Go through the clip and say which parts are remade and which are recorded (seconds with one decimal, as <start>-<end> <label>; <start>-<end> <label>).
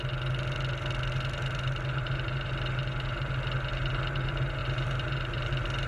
0.0-1.9 recorded; 1.9-2.5 remade; 2.5-4.6 recorded; 4.6-5.5 remade; 5.5-5.9 recorded